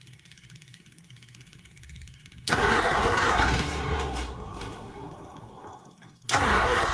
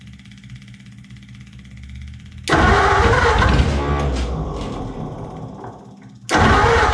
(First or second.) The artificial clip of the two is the first